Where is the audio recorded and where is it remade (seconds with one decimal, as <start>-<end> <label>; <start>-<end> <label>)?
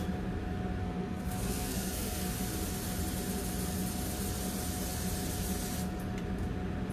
0.0-0.8 recorded; 0.8-2.3 remade; 2.3-6.9 recorded